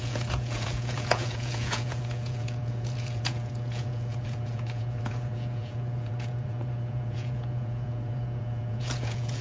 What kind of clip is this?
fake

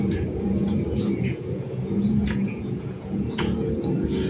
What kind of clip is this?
fake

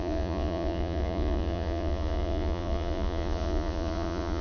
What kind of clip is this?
fake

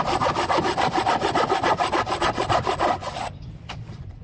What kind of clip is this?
real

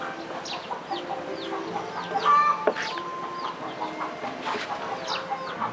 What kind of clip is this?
real